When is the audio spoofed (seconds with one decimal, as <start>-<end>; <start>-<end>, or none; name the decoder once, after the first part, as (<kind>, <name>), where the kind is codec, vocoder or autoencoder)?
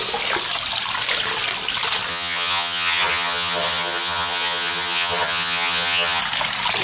2.1-6.2 (vocoder, HiFi-GAN)